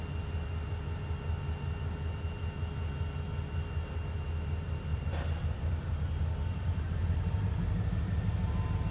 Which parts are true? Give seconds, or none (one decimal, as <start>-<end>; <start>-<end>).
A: 0.0-4.9; 6.8-8.9